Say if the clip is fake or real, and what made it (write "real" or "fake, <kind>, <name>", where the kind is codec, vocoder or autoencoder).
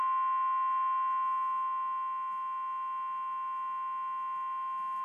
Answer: real